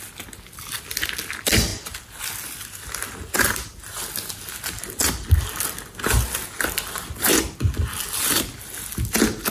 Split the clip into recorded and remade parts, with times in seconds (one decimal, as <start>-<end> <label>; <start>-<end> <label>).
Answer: 0.0-1.7 recorded; 1.7-2.2 remade; 2.2-9.5 recorded

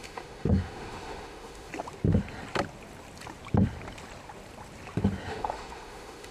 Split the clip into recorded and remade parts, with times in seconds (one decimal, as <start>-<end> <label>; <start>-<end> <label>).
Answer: 0.0-1.7 remade; 1.7-5.3 recorded; 5.3-6.3 remade